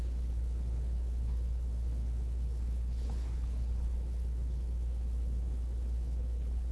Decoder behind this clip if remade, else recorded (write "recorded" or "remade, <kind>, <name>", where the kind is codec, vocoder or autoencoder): remade, codec, HILCodec